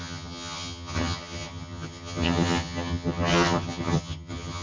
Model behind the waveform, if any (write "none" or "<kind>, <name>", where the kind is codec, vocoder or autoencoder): vocoder, HiFi-GAN